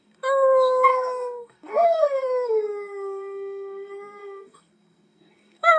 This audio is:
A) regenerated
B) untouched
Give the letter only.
A